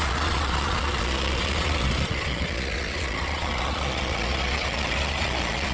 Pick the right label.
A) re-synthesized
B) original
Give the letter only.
A